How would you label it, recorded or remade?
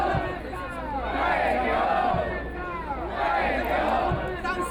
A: recorded